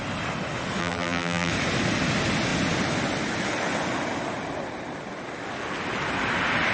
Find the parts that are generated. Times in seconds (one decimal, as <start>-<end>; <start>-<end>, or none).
0.8-1.5